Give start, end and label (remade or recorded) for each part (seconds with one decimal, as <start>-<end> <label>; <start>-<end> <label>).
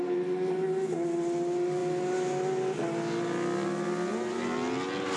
0.0-5.2 recorded